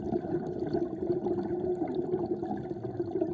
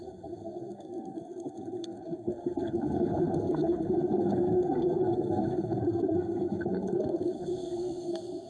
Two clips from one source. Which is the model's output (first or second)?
second